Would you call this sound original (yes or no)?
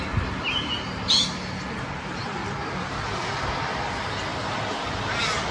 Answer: yes